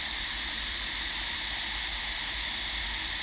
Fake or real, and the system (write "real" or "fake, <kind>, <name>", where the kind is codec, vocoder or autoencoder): real